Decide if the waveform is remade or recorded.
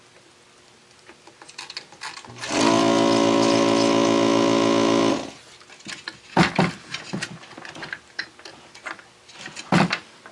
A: recorded